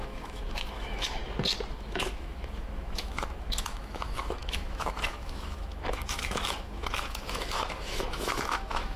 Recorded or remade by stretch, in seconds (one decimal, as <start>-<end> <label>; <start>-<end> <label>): 0.0-1.2 remade; 1.2-1.7 recorded; 1.7-9.0 remade